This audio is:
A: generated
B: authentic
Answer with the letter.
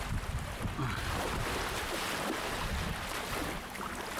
B